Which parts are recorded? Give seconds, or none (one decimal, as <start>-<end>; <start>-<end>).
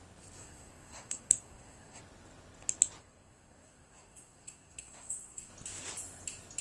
0.0-0.4; 2.0-3.0; 5.5-6.6